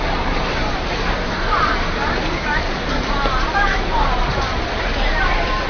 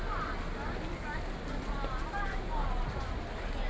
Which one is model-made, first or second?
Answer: first